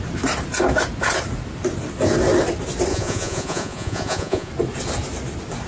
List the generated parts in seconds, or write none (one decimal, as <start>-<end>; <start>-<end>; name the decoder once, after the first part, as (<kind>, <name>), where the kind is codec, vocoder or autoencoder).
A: 2.9-4.5 (vocoder, Vocos)